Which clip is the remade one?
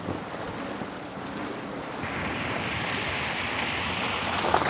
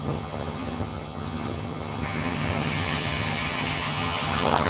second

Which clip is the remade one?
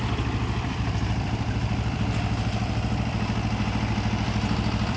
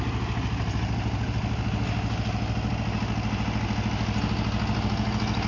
first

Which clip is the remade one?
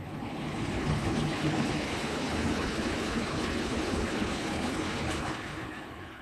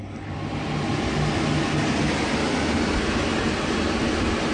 first